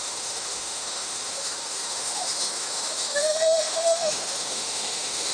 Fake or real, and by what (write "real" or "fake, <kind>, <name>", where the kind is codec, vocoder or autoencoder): fake, autoencoder, DAC-VAE